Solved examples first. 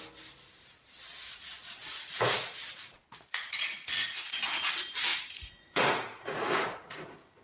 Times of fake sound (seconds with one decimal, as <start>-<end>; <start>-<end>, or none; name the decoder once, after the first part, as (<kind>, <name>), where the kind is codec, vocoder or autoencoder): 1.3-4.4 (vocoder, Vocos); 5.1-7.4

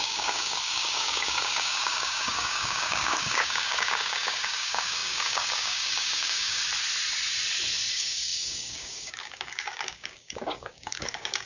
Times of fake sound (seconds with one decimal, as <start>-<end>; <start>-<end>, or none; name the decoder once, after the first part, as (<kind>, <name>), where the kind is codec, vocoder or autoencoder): 0.0-6.6 (codec, DAC); 7.9-11.5

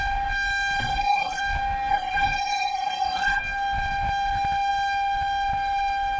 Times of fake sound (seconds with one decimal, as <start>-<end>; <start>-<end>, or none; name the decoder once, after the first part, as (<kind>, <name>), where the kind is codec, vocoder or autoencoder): 0.8-1.4 (codec, SNAC); 1.9-3.4

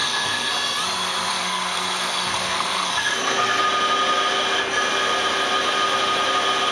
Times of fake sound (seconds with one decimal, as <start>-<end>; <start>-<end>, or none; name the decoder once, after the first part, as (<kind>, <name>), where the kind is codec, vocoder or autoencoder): 0.0-0.5 (codec, SNAC); 1.3-3.6

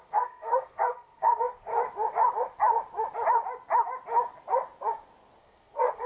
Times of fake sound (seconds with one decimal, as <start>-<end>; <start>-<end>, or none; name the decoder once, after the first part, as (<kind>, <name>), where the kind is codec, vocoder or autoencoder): 0.0-1.7 (codec, SNAC); 5.4-6.1

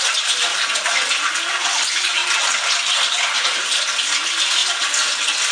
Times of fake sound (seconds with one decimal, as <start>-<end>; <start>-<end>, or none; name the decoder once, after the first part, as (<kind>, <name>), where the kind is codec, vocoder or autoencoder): none

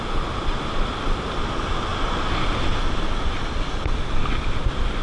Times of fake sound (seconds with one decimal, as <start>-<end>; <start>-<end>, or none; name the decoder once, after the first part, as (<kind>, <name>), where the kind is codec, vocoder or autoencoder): none

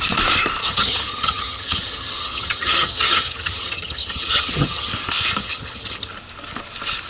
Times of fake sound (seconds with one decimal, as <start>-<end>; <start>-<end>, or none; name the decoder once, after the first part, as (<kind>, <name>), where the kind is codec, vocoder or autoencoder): 0.6-4.9 (vocoder, HiFi-GAN); 5.4-6.1